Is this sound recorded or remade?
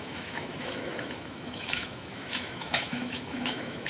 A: remade